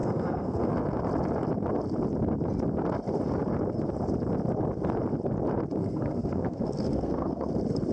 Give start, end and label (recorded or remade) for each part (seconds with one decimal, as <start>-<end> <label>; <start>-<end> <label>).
0.0-0.7 remade; 0.7-5.8 recorded; 5.8-7.5 remade; 7.5-7.9 recorded